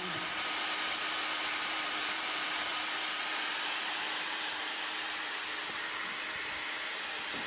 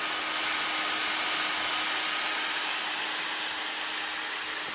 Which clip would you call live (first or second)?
second